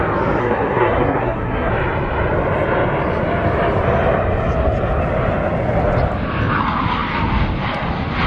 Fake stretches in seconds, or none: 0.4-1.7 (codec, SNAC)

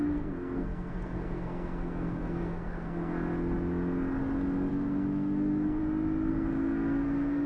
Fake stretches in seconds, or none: 0.0-3.1 (codec, SNAC); 4.7-5.8; 6.3-7.5

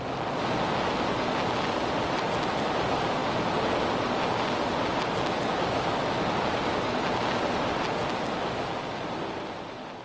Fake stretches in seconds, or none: none